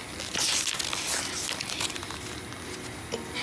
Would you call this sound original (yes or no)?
yes